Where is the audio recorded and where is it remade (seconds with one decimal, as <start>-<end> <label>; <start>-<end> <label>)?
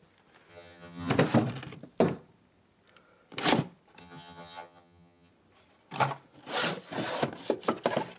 0.0-0.5 recorded; 0.5-1.1 remade; 1.1-4.0 recorded; 4.0-5.3 remade; 5.3-8.2 recorded